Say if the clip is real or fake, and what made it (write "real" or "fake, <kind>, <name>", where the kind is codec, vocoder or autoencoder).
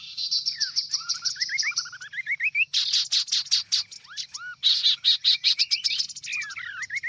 real